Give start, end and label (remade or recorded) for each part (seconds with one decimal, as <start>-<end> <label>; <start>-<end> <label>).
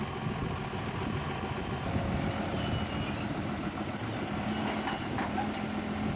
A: 0.0-6.2 recorded